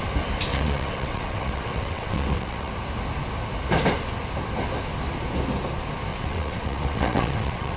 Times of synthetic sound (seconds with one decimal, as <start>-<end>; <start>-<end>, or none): 0.5-2.7; 6.1-7.8